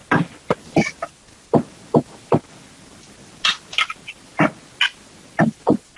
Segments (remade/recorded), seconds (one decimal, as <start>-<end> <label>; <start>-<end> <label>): 0.0-6.0 recorded